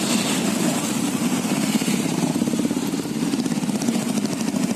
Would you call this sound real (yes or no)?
yes